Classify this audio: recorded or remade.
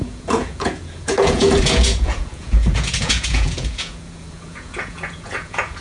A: remade